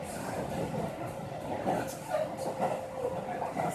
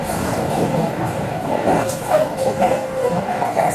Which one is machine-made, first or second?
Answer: second